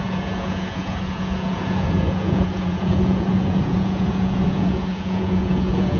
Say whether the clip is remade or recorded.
remade